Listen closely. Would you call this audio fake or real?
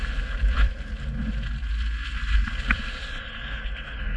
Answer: real